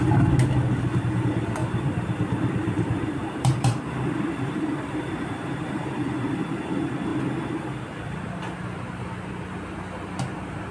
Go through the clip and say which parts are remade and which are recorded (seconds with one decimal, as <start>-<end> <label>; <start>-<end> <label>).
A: 0.0-1.6 recorded; 1.6-6.5 remade; 6.5-10.7 recorded